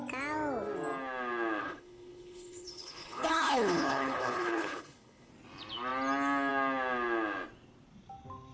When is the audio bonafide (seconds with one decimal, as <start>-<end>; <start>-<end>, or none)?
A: 0.0-1.6; 5.3-8.5